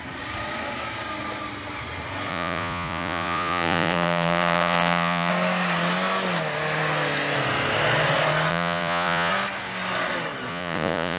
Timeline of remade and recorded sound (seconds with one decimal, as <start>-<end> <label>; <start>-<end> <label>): 0.0-2.3 recorded; 2.3-5.3 remade; 5.3-8.5 recorded; 8.5-9.3 remade; 9.3-10.5 recorded; 10.5-11.2 remade